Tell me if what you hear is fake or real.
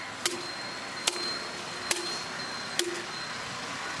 real